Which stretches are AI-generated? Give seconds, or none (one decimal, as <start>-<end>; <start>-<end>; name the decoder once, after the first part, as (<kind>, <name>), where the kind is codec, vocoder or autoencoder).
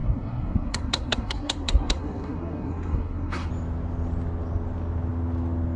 0.0-3.5 (codec, SNAC)